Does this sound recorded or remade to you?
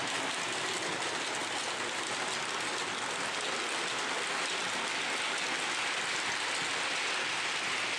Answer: recorded